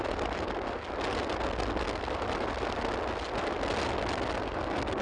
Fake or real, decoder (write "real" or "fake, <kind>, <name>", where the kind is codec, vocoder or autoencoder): real